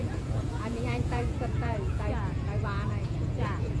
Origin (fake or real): fake